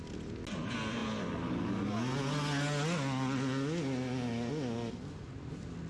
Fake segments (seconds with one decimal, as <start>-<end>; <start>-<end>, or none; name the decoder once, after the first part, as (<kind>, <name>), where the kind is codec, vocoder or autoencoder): none